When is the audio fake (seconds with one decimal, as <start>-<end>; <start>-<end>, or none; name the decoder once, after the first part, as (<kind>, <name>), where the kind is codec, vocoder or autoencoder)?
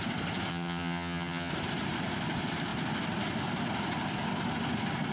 0.5-1.5 (vocoder, HiFi-GAN)